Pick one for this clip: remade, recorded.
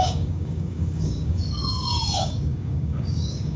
remade